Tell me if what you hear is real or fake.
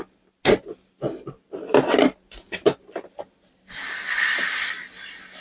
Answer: real